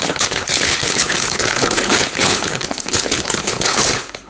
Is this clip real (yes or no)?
no